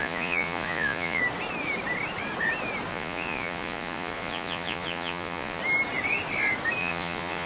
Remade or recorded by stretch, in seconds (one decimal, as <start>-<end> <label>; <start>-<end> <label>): 0.0-1.2 remade; 1.2-2.9 recorded; 2.9-5.6 remade; 5.6-6.8 recorded; 6.8-7.5 remade